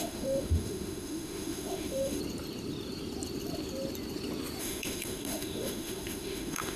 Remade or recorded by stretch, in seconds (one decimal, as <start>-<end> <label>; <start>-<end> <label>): 0.0-2.2 remade; 2.2-4.6 recorded; 4.6-6.8 remade